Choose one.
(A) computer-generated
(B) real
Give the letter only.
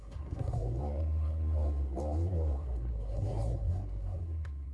A